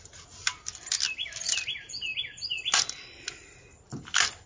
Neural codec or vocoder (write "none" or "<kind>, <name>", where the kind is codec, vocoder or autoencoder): none